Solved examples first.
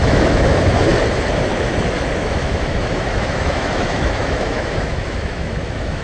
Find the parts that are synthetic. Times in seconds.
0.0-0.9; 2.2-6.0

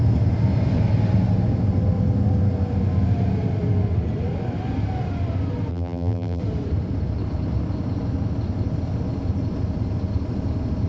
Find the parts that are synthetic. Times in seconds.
5.7-6.4

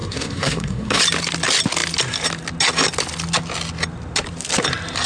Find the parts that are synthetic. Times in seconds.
0.0-1.0

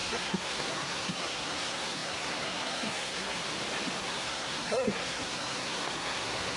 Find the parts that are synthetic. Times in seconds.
0.0-3.4; 4.0-6.6